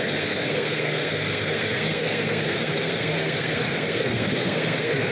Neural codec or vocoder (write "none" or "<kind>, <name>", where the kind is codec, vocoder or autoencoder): codec, SNAC